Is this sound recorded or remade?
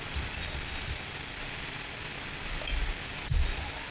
recorded